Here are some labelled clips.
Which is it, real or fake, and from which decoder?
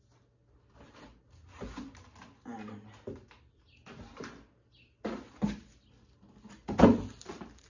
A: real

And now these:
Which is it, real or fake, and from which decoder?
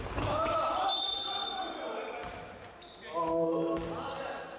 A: real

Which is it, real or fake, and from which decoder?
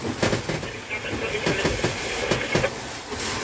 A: real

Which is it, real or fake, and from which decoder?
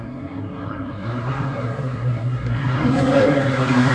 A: fake, codec, SNAC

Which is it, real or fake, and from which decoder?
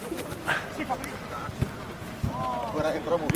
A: real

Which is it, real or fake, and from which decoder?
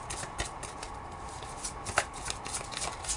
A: real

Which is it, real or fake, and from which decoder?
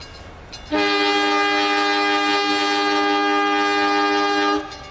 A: real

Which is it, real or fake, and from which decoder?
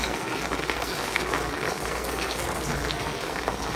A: fake, codec, SNAC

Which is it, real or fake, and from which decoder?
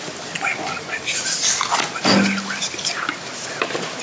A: real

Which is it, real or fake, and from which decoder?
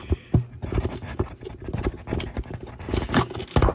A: real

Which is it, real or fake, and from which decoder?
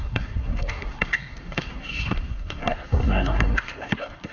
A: fake, codec, SNAC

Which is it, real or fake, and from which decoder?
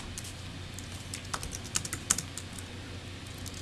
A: real